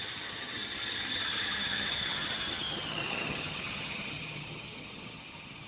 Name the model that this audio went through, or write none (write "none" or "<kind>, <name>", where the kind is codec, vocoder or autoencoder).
vocoder, HiFi-GAN